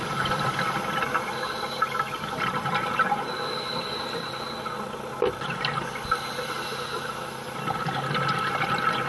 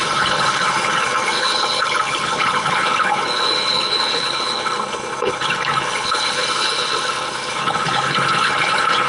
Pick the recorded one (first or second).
first